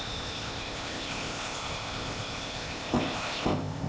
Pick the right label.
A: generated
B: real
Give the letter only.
A